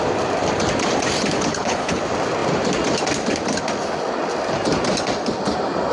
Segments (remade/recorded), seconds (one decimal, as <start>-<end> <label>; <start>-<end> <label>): 0.0-1.5 recorded; 1.5-2.0 remade; 2.0-5.9 recorded